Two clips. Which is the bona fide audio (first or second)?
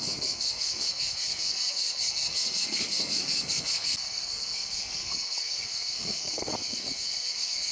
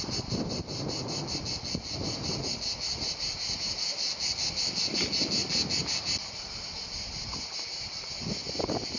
second